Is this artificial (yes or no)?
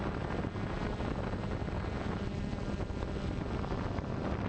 no